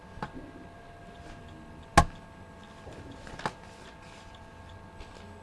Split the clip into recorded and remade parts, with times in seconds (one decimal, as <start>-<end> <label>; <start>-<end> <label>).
0.0-5.4 recorded

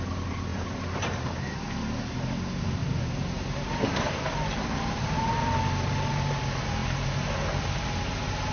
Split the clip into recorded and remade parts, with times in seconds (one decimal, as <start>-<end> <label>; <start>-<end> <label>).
0.0-0.5 recorded; 0.5-1.5 remade; 1.5-2.8 recorded; 2.8-5.3 remade; 5.3-8.5 recorded

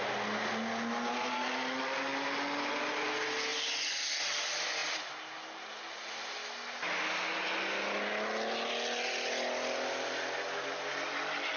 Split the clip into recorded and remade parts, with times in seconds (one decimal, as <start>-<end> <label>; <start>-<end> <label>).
0.0-11.6 recorded

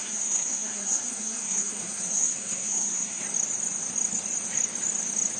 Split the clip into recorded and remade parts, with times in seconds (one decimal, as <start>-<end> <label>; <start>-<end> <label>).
0.0-3.2 remade; 3.2-5.4 recorded

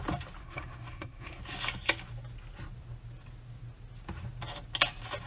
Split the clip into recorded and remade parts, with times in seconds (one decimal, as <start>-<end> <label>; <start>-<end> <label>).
0.0-0.4 recorded; 0.4-1.4 remade; 1.4-5.3 recorded

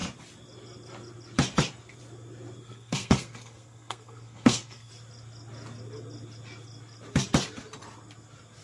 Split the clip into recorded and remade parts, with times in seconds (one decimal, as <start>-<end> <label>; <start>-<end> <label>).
0.0-2.6 recorded; 2.6-4.9 remade; 4.9-8.6 recorded

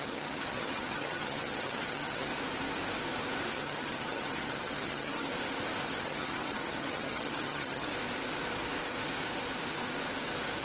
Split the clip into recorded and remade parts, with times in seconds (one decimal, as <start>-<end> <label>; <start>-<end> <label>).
0.0-2.3 remade; 2.3-3.5 recorded; 3.5-5.3 remade; 5.3-6.0 recorded; 6.0-7.9 remade; 7.9-10.6 recorded

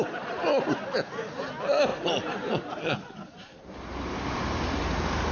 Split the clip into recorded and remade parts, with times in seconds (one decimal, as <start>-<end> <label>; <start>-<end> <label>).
0.0-5.3 recorded